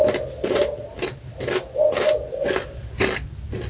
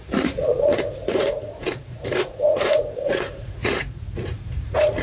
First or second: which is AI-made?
second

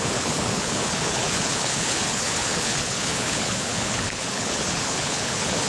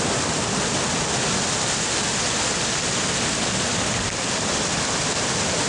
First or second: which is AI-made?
first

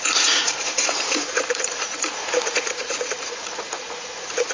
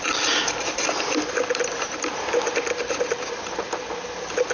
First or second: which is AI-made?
first